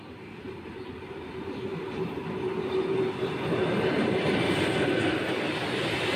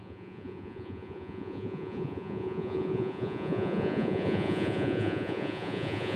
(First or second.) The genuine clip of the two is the first